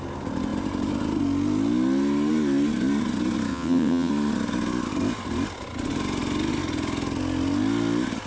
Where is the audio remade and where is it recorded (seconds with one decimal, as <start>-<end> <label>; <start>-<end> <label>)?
0.0-3.5 recorded; 3.5-4.1 remade; 4.1-8.3 recorded